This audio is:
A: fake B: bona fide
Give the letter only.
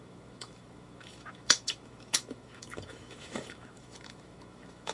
A